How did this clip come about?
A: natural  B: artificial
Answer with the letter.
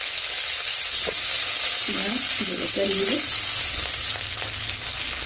A